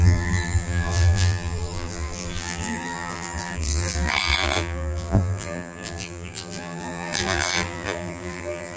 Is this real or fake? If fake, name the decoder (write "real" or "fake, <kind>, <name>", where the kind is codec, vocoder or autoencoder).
fake, vocoder, BigVGAN v2